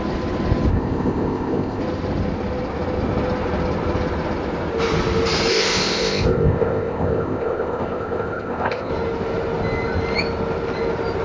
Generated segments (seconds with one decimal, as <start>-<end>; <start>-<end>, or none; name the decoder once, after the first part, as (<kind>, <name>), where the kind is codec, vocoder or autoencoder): 0.7-1.8 (codec, ZipCodec); 5.5-8.9